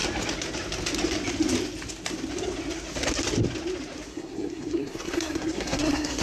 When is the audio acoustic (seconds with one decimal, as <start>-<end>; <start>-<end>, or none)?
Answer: 0.0-4.1